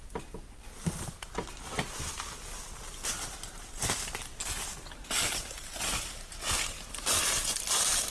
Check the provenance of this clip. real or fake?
real